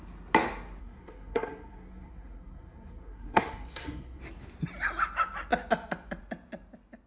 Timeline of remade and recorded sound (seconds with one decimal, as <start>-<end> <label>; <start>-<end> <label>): 0.0-0.8 recorded; 0.8-4.2 remade; 4.2-7.1 recorded